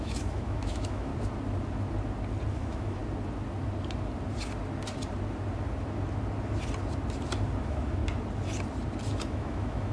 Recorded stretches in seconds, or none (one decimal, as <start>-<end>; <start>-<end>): 1.1-2.5; 3.0-7.6; 8.0-9.3